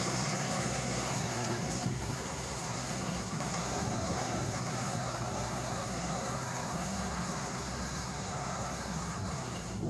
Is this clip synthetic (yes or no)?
yes